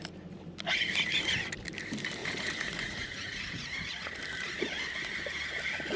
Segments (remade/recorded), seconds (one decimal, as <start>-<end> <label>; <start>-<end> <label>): 0.0-2.2 recorded; 2.2-3.9 remade; 3.9-6.0 recorded